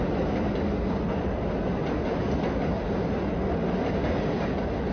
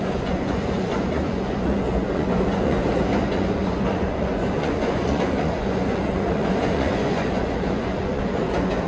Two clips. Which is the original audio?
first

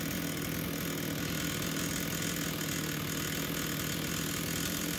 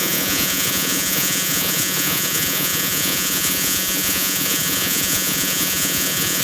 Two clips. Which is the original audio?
first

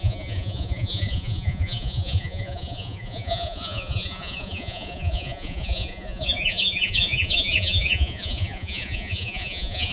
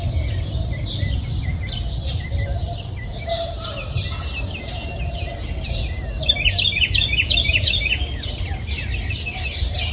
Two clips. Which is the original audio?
second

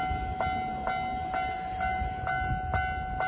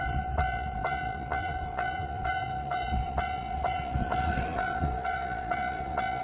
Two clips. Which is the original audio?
first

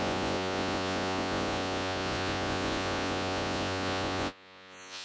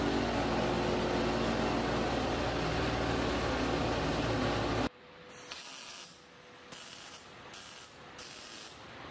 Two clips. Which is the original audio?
second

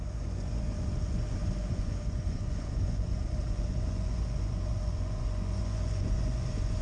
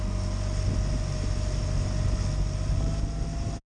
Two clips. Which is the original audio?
second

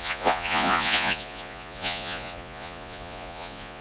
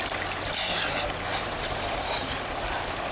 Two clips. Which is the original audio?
second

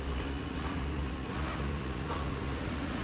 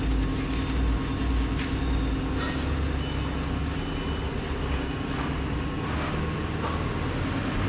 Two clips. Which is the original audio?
second